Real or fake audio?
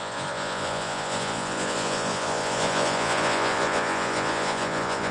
fake